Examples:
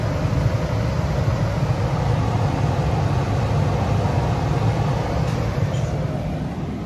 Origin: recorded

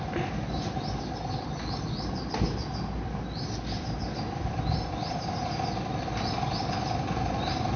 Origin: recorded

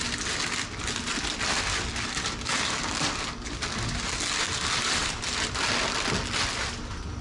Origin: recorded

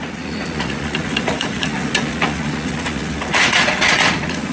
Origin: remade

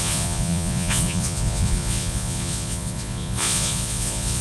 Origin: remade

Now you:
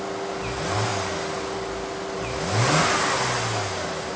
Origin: recorded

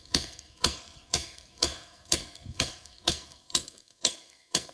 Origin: remade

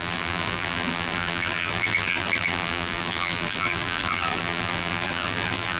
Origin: remade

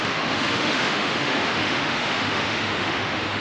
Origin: remade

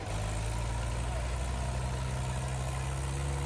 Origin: recorded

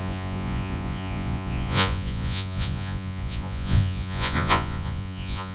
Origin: remade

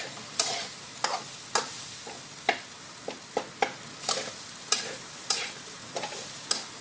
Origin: recorded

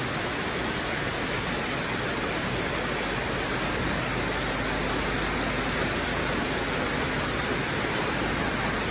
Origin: recorded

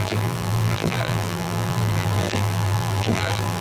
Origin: remade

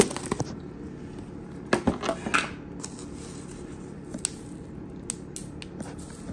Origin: recorded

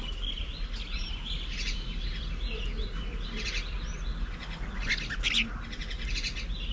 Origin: recorded